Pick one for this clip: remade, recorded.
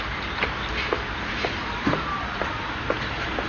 recorded